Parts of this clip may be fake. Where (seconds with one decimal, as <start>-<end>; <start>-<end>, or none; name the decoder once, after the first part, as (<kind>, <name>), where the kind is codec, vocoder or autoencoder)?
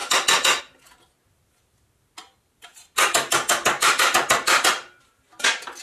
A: none